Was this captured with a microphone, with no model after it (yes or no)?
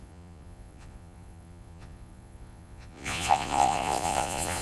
no